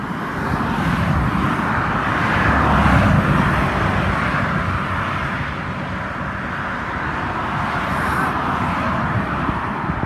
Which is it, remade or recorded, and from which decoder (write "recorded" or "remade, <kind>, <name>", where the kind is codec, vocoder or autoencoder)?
recorded